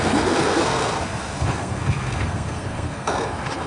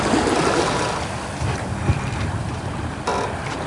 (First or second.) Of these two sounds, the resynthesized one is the first